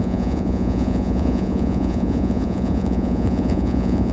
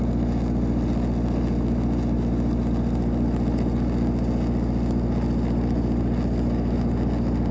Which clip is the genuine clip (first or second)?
second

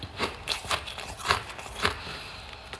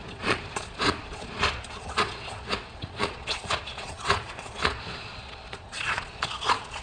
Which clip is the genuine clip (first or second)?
first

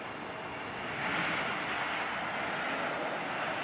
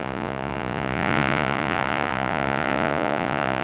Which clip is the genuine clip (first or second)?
first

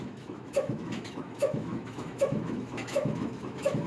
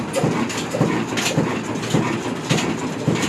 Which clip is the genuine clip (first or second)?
second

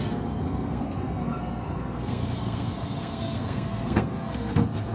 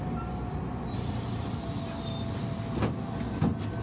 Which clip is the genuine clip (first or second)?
second